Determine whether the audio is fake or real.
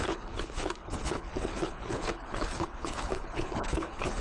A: fake